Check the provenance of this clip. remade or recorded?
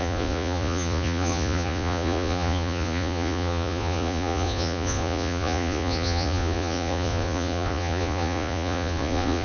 remade